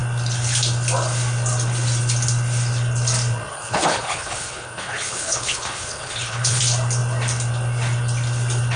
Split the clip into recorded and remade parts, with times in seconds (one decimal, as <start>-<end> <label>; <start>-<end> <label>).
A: 0.0-3.5 recorded; 3.5-6.6 remade; 6.6-8.8 recorded